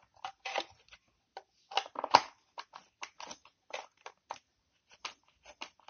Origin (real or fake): real